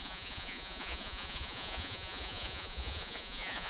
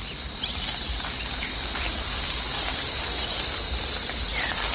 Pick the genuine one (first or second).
second